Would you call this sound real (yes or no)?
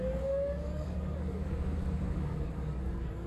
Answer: no